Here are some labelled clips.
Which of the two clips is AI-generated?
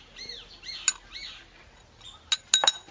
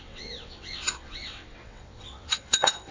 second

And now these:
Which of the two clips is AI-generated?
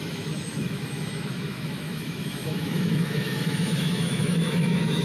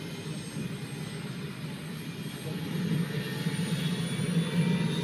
first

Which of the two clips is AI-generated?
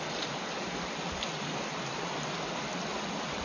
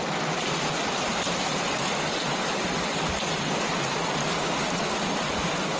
first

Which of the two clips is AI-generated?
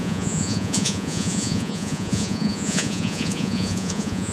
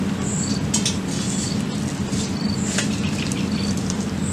first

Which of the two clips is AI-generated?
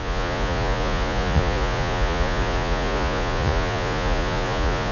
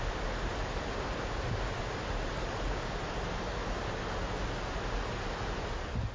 first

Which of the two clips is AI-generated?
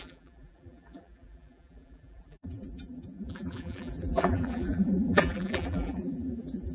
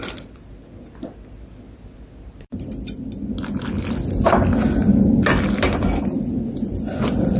first